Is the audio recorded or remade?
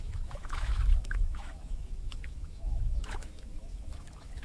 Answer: remade